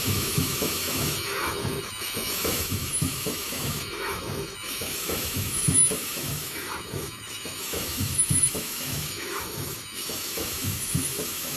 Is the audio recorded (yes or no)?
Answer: no